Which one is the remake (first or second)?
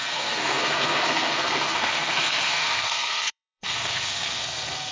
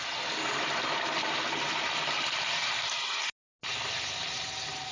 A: first